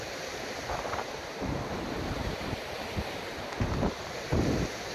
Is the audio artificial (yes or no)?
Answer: yes